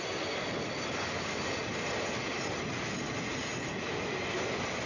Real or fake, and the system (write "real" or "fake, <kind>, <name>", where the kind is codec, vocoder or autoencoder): real